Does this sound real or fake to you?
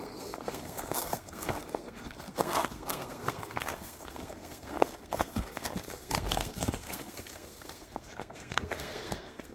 fake